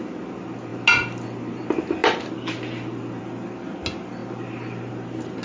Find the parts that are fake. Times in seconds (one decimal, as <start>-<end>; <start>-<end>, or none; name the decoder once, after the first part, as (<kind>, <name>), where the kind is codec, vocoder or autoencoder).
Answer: none